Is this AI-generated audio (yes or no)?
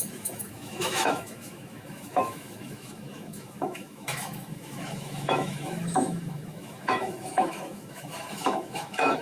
yes